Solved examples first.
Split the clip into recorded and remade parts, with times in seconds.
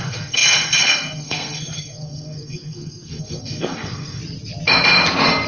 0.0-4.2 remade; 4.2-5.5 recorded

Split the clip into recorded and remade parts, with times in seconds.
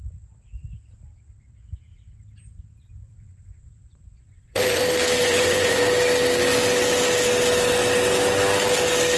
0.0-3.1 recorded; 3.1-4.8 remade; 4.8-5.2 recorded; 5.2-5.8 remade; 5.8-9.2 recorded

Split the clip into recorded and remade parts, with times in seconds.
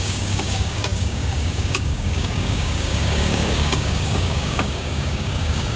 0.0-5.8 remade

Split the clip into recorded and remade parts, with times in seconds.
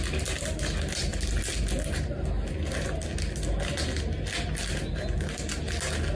0.0-6.2 recorded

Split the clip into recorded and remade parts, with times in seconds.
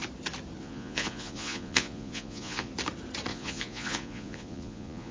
0.0-0.6 recorded; 0.6-2.7 remade; 2.7-3.3 recorded; 3.3-5.1 remade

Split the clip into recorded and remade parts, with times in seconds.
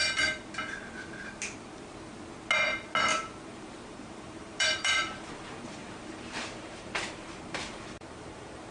0.0-3.1 recorded; 3.1-8.7 remade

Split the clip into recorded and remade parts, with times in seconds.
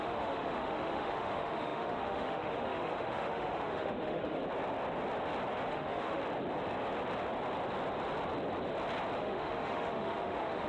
0.0-4.4 remade; 4.4-5.7 recorded; 5.7-6.2 remade; 6.2-9.2 recorded; 9.2-10.7 remade